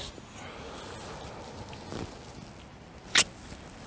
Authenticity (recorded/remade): recorded